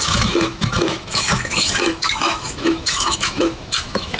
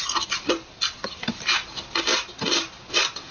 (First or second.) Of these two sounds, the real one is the second